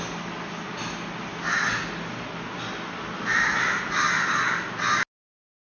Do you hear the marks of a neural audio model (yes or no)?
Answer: no